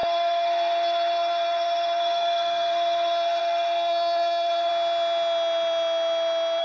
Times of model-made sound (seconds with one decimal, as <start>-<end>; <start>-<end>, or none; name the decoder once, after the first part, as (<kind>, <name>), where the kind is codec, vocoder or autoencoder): 0.0-4.7 (codec, SNAC)